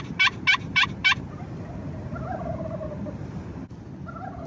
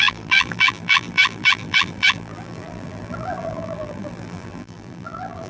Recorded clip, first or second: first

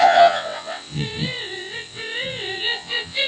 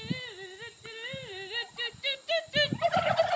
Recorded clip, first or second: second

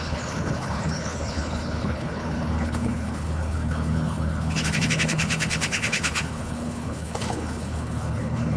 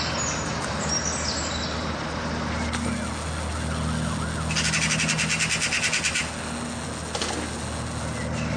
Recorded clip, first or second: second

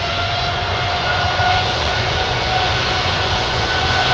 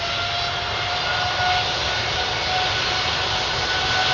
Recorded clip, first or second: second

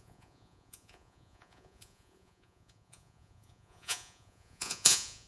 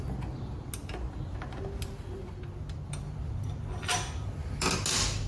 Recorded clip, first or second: second